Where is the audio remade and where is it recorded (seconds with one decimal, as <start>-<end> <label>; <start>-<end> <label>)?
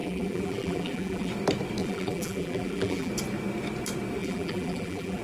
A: 0.0-1.3 remade; 1.3-1.8 recorded; 1.8-3.1 remade; 3.1-4.2 recorded; 4.2-5.2 remade